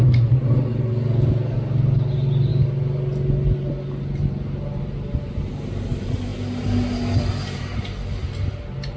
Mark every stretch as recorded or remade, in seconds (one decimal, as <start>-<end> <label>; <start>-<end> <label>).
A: 0.0-9.0 recorded